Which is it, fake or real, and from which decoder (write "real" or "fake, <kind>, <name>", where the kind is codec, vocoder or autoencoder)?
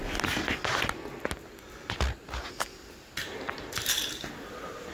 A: real